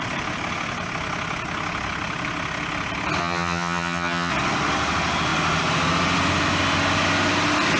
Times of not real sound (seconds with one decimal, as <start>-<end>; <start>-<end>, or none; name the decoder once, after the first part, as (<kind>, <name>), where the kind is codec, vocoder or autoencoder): 3.2-4.3 (vocoder, HiFi-GAN)